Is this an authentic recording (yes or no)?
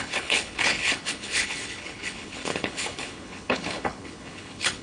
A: no